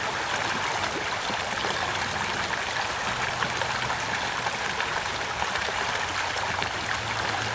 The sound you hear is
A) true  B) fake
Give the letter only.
A